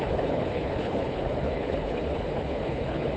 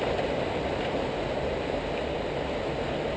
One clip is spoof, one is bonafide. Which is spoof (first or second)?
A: first